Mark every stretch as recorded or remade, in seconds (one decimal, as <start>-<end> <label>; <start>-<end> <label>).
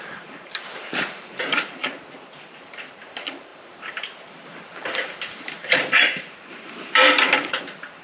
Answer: 0.0-1.8 remade; 1.8-2.3 recorded; 2.3-8.0 remade